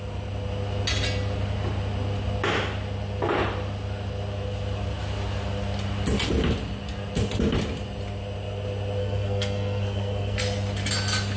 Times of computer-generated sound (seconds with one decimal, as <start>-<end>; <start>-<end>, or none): 9.0-10.4